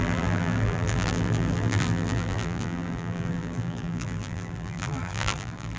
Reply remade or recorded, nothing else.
remade